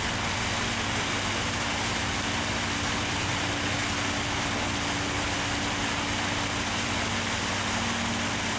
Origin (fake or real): real